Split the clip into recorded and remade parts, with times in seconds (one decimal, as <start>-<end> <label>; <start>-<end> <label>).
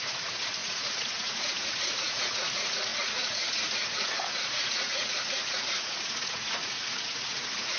0.0-7.8 remade